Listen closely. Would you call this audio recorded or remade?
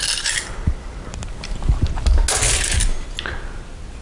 recorded